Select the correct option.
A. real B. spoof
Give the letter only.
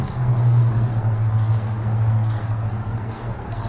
B